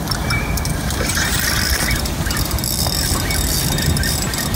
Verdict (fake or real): real